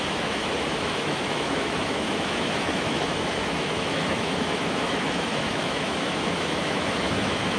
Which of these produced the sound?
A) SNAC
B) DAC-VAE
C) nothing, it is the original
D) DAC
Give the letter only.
B